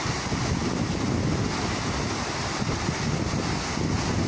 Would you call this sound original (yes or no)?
yes